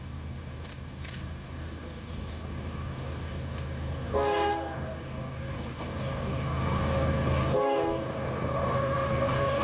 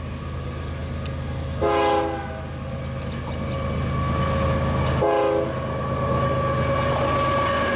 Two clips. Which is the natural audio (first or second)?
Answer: second